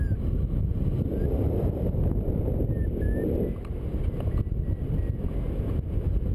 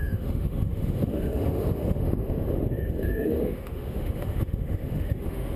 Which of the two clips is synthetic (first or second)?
second